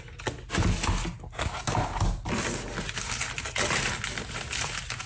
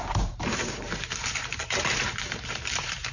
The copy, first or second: second